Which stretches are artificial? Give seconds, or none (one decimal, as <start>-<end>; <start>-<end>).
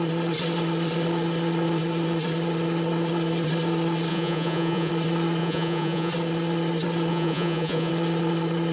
4.1-4.9; 5.4-6.1; 7.1-7.9